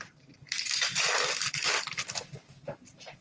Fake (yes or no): no